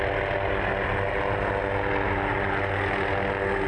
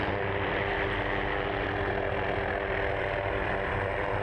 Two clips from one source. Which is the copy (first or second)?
second